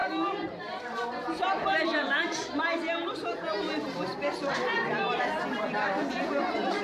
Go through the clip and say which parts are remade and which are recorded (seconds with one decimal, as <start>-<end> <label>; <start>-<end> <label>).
0.0-6.8 recorded